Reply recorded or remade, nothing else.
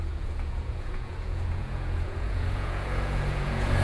remade